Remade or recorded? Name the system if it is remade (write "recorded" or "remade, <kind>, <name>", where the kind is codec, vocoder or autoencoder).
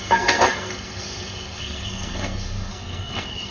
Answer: remade, codec, SNAC